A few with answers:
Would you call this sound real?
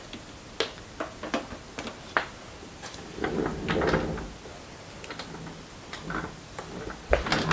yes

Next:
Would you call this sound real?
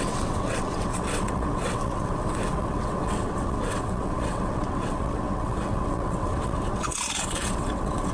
no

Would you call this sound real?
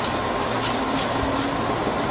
yes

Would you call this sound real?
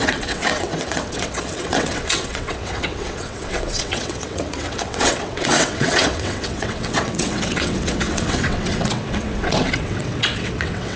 no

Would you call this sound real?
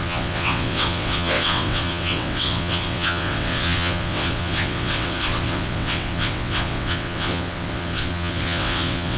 no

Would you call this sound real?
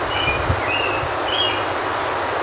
yes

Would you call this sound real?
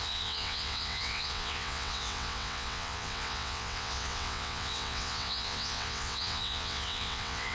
no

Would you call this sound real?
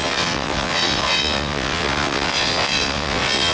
no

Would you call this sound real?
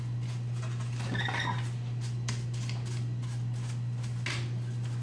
yes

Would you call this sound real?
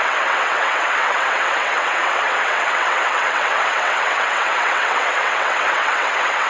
no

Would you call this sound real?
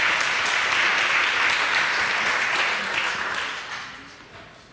yes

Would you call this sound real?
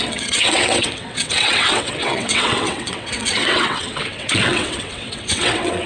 no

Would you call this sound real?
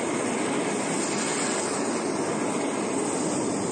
yes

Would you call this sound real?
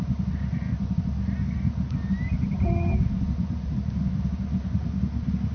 yes